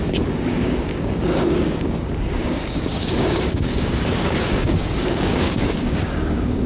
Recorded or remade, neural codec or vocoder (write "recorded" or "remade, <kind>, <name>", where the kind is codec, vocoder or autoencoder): remade, codec, DAC